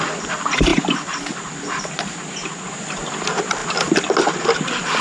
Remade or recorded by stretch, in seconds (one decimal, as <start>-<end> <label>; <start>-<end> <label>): 0.0-5.0 recorded